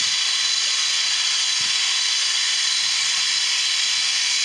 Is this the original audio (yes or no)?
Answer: yes